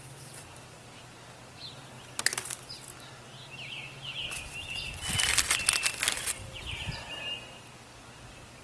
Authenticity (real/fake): real